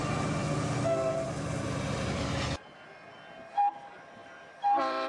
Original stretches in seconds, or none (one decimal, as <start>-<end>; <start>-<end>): 0.0-0.4; 2.3-4.2